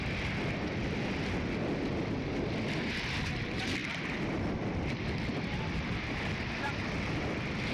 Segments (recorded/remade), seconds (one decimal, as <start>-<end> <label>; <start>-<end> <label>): 0.0-7.7 recorded